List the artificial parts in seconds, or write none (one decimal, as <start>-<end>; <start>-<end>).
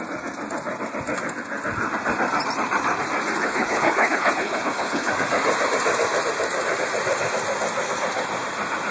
3.4-5.1